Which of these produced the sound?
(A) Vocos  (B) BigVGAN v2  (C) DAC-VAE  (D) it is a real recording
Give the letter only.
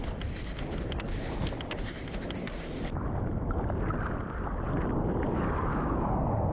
D